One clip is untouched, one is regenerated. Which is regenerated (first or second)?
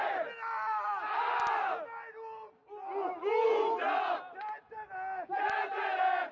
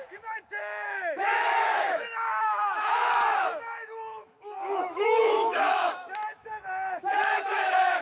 second